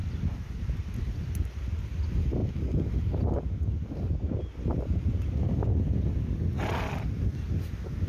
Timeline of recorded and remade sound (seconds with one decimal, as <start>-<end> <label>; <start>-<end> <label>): 0.0-8.1 recorded